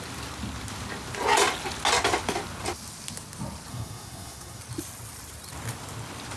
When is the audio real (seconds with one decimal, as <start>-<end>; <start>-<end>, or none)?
0.0-3.7; 4.6-6.4